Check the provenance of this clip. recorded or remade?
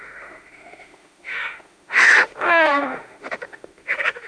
remade